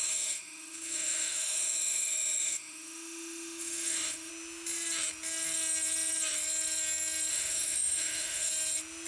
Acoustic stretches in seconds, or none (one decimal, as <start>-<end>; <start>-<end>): 4.3-7.3; 8.5-9.1